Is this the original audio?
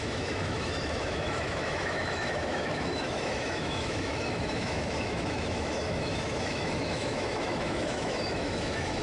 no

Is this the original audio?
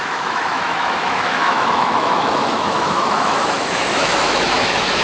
no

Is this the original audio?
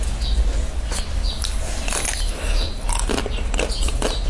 yes